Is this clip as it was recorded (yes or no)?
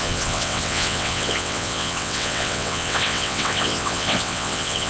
no